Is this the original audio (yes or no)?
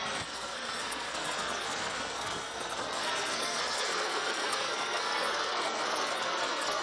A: no